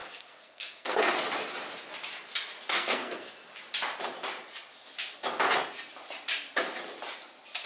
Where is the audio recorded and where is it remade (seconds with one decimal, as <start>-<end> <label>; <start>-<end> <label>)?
0.0-1.1 remade; 1.1-2.7 recorded; 2.7-3.3 remade; 3.3-7.7 recorded